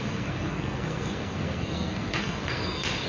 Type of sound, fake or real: fake